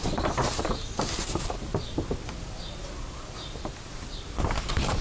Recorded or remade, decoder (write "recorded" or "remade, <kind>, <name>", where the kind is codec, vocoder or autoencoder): recorded